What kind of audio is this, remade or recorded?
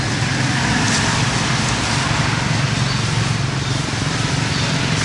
recorded